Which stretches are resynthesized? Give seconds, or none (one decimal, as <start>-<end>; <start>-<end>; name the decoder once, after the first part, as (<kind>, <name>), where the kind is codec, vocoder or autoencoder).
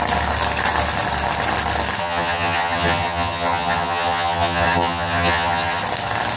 2.0-5.8 (vocoder, HiFi-GAN)